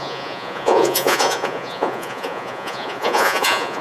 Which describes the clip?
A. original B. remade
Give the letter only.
B